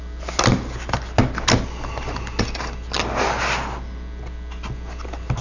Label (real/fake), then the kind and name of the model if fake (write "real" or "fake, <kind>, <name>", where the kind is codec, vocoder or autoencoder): real